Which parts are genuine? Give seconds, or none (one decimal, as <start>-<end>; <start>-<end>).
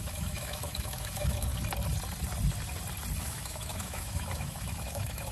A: 1.5-3.2